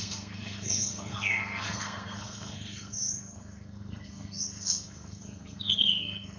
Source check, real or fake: fake